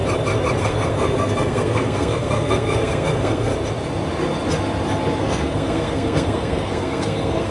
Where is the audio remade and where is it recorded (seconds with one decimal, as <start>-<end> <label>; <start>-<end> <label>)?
0.0-0.6 recorded; 0.6-3.5 remade; 3.5-5.2 recorded; 5.2-7.5 remade